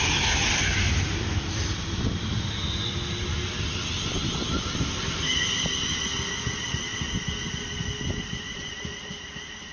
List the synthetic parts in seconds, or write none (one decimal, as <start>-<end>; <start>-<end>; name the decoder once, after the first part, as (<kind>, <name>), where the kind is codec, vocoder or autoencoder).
none